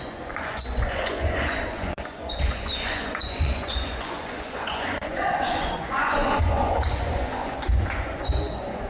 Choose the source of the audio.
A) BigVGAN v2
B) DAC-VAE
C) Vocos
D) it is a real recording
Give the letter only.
C